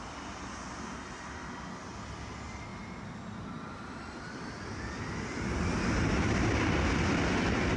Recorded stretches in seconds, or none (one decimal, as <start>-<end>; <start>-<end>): 0.0-7.8